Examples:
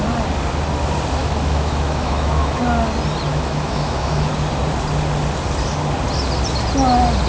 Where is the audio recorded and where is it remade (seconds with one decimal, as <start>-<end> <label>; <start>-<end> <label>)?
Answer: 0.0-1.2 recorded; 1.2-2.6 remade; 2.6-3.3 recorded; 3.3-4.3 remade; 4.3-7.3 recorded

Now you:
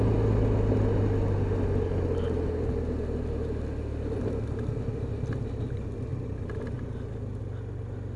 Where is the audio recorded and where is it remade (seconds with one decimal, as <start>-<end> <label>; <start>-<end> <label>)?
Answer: 0.0-8.2 recorded

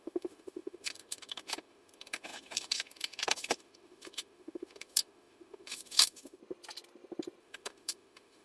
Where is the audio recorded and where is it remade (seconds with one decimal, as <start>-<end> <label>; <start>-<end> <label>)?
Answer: 0.0-6.4 remade; 6.4-7.4 recorded; 7.4-8.4 remade

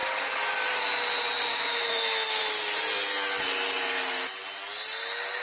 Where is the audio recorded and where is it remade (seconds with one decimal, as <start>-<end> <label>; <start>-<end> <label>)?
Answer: 0.0-1.5 recorded; 1.5-2.4 remade; 2.4-5.4 recorded

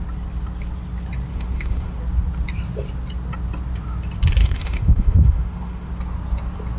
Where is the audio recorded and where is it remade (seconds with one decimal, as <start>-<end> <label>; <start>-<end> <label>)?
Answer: 0.0-1.3 recorded; 1.3-2.0 remade; 2.0-4.4 recorded; 4.4-5.9 remade; 5.9-6.8 recorded

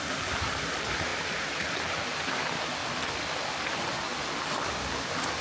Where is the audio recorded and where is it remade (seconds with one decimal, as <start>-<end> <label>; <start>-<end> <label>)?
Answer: 0.0-5.4 recorded

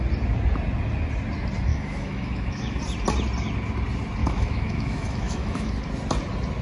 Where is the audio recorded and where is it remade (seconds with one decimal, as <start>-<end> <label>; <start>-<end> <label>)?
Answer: 0.0-1.7 recorded; 1.7-2.8 remade; 2.8-4.2 recorded; 4.2-5.7 remade; 5.7-6.6 recorded

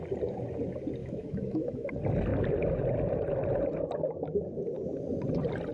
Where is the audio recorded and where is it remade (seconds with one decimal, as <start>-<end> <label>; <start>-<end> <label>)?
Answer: 0.0-1.0 recorded; 1.0-1.9 remade; 1.9-5.7 recorded